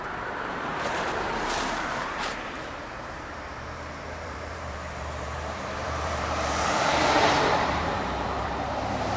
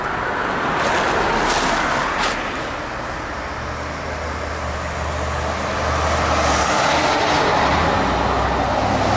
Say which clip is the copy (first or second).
first